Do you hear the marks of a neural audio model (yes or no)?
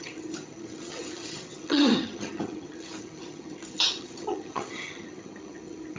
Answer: yes